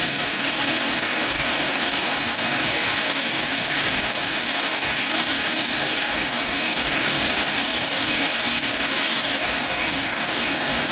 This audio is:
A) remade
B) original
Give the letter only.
A